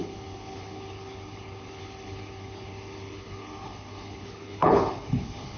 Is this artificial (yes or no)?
yes